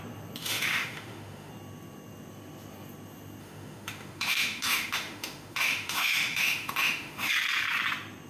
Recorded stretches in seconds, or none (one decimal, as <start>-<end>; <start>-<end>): 0.0-0.4; 1.5-3.4; 7.3-8.3